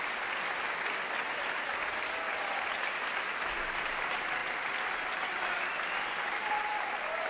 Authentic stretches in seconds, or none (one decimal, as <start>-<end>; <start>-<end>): 0.0-7.3